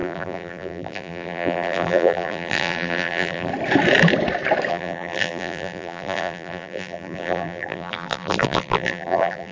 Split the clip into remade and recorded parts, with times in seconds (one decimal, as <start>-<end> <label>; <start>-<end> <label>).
0.0-3.5 remade; 3.5-4.7 recorded; 4.7-9.5 remade